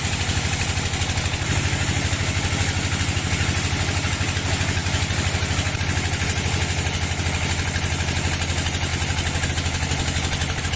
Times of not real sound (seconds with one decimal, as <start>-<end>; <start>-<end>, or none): none